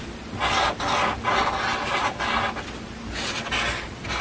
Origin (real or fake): real